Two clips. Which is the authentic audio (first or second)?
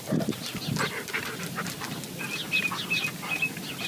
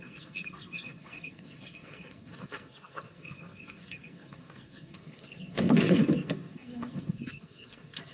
first